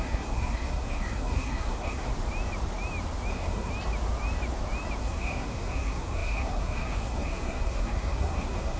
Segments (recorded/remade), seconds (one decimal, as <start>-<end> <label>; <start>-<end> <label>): 0.0-2.1 remade; 2.1-3.3 recorded; 3.3-3.7 remade; 3.7-5.0 recorded; 5.0-8.8 remade